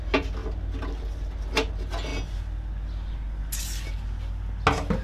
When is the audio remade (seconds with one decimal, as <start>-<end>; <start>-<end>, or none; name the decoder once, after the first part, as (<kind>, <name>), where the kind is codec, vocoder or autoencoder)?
none